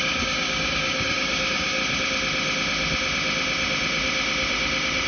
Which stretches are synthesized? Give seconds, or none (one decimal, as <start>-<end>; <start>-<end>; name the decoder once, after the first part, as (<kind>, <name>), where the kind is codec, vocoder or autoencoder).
0.0-1.8 (codec, DAC)